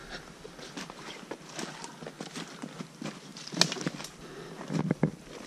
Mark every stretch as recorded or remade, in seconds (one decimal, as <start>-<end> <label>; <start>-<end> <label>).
0.0-0.5 remade; 0.5-5.5 recorded